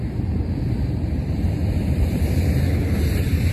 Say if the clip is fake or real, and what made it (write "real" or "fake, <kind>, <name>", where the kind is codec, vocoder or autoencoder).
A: fake, vocoder, BigVGAN v2